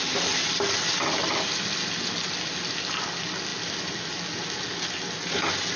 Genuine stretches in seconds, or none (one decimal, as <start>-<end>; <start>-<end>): 0.0-5.8